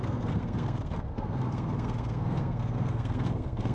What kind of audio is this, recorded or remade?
remade